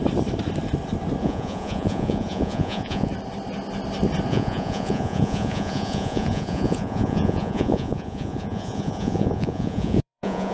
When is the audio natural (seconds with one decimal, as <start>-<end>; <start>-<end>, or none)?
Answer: 0.0-1.2; 3.1-4.3